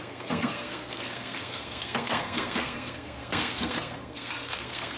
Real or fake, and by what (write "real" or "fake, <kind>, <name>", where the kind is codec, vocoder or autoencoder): fake, codec, SNAC